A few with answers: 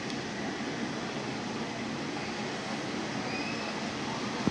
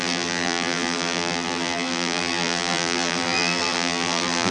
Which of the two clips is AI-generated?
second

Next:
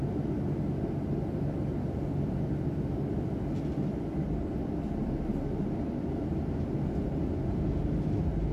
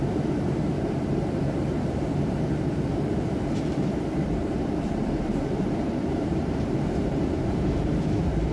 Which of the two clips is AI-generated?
second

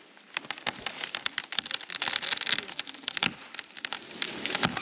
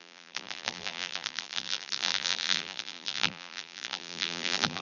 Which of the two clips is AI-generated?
second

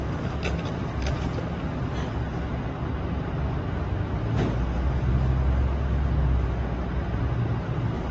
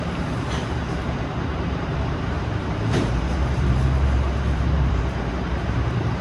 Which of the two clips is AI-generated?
second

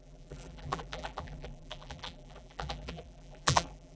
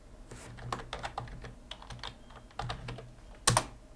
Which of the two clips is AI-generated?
first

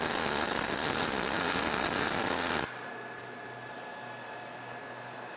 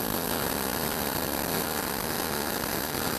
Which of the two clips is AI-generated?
second